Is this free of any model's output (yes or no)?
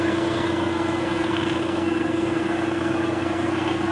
no